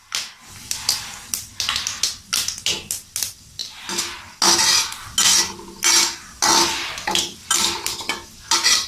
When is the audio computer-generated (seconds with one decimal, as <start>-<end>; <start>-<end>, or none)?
none